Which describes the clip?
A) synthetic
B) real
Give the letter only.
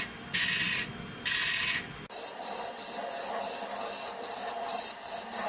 B